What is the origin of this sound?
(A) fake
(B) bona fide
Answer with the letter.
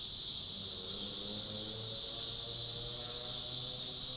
B